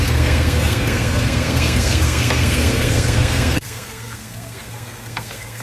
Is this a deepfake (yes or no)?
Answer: yes